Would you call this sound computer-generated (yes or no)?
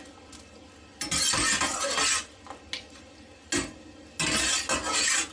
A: no